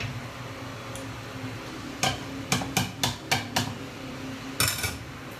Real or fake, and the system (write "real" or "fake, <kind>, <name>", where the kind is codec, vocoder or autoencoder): real